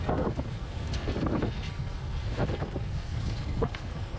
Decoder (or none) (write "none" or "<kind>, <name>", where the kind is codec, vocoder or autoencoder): codec, SNAC